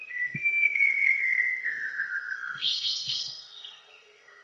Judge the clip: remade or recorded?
remade